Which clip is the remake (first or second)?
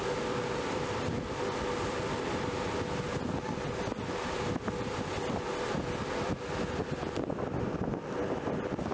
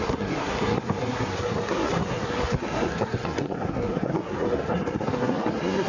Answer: second